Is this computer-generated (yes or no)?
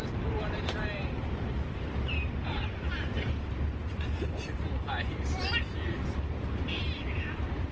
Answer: yes